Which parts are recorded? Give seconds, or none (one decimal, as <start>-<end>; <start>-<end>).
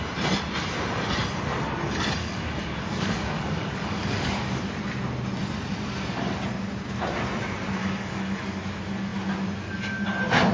0.0-2.2; 4.6-7.8; 8.6-10.5